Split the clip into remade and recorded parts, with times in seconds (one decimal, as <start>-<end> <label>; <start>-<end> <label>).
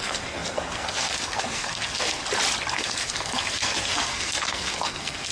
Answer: 0.0-2.2 remade; 2.2-2.7 recorded; 2.7-5.3 remade